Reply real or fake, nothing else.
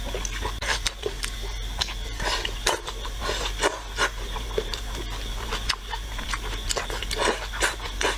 fake